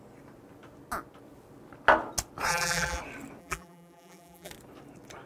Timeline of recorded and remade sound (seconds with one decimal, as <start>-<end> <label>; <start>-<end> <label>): 0.0-2.5 recorded; 2.5-3.0 remade; 3.0-3.4 recorded; 3.4-4.5 remade; 4.5-5.3 recorded